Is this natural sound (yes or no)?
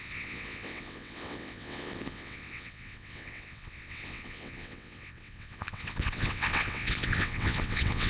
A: no